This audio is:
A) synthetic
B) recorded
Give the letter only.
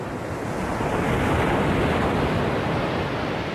B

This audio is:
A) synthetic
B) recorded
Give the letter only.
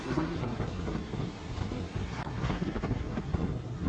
A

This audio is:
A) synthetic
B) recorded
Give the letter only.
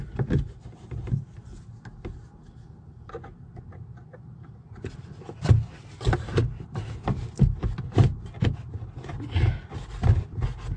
B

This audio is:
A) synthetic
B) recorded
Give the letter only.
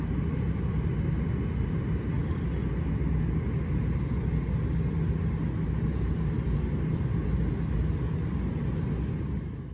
B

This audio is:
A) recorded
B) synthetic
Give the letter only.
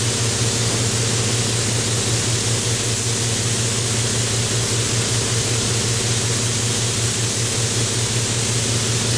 A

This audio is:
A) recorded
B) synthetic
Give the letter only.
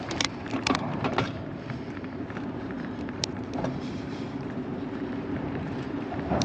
B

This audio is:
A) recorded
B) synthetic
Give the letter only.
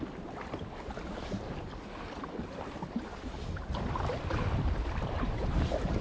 B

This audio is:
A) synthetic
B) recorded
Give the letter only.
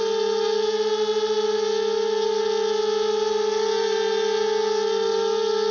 B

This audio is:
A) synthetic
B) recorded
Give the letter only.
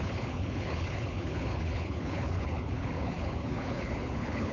A